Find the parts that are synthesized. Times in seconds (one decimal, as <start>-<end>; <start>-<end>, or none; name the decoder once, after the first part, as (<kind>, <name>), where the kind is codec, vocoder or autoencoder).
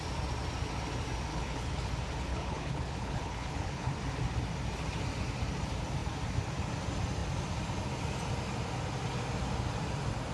1.3-1.9 (codec, HILCodec); 2.3-3.9